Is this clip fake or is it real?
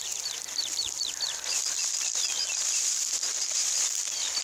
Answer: real